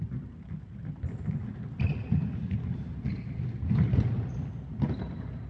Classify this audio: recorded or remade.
recorded